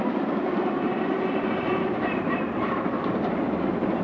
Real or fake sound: fake